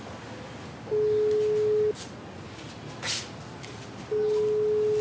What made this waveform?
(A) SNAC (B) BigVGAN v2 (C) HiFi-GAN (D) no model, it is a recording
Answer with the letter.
D